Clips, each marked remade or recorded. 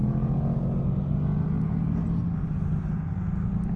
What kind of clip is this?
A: recorded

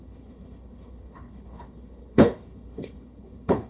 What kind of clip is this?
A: remade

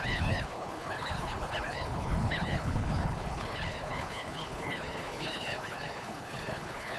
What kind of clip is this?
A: remade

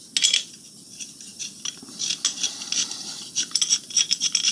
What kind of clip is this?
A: recorded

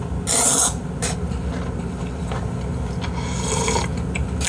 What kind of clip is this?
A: recorded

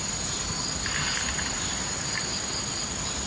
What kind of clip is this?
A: recorded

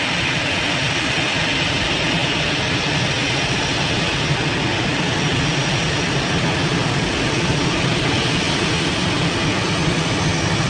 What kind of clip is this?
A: recorded